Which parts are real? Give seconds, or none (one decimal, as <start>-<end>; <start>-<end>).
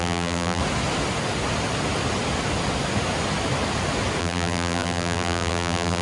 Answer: 0.6-4.2